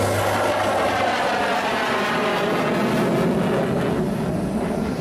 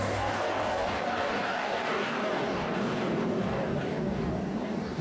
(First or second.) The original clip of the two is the first